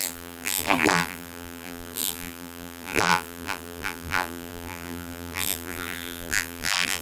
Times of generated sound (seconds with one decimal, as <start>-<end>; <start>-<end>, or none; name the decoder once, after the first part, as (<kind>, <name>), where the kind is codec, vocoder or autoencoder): 0.0-7.0 (vocoder, BigVGAN v2)